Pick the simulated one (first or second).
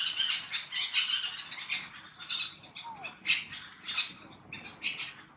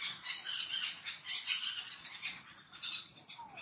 second